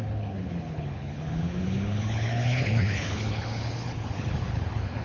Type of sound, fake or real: fake